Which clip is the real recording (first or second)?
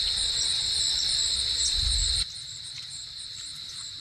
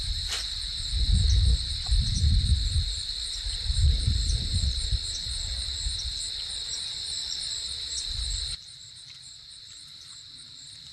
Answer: first